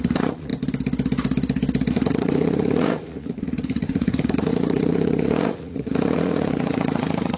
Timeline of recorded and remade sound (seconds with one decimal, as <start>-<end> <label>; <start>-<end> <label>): 0.0-0.5 remade; 0.5-1.9 recorded; 1.9-7.4 remade